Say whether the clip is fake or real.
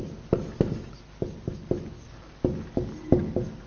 real